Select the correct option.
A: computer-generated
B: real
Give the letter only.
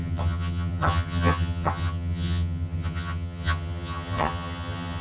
A